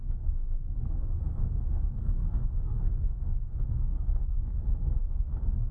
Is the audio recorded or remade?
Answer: remade